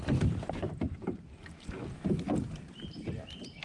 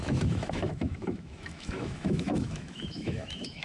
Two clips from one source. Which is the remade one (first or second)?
second